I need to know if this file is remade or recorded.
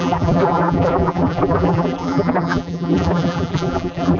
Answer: remade